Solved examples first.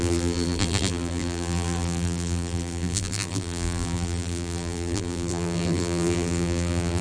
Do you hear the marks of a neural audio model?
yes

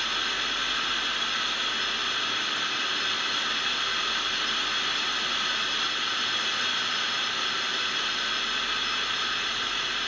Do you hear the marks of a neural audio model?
no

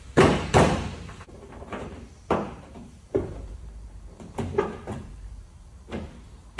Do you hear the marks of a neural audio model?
yes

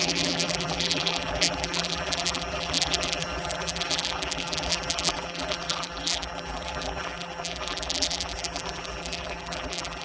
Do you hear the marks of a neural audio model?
yes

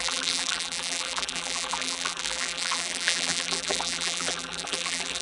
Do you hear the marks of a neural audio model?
yes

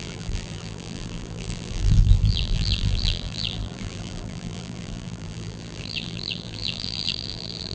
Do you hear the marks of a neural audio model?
yes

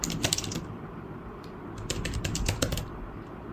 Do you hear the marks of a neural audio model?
no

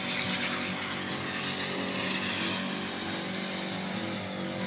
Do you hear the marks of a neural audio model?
no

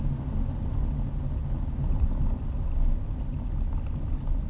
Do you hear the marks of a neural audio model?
no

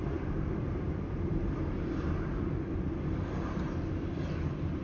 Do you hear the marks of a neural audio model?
yes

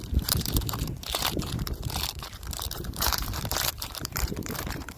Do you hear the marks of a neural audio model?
yes